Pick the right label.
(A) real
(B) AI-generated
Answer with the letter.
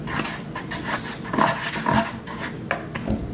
A